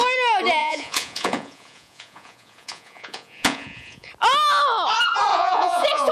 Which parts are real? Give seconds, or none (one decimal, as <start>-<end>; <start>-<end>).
0.0-0.6; 4.1-5.3